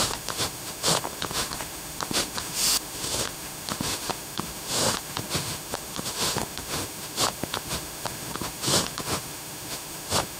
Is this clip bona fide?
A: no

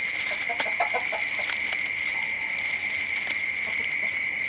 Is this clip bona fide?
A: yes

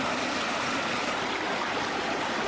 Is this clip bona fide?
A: yes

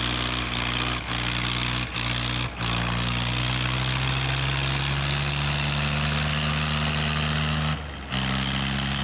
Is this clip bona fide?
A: yes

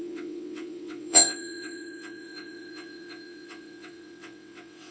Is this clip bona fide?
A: no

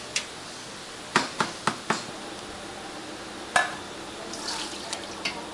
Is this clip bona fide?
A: yes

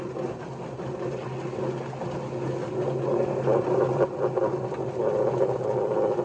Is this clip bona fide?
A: yes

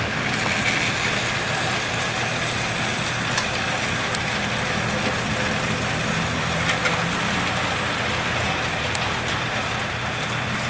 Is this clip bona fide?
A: yes